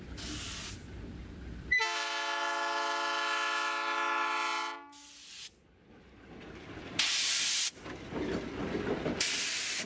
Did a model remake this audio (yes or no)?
no